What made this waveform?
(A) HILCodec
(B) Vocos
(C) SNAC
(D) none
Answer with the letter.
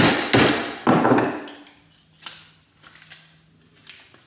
D